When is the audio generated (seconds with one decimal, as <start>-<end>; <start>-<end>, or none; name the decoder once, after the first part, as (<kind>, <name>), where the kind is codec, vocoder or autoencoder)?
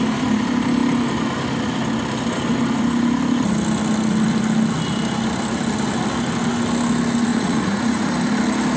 7.3-8.1 (vocoder, Vocos)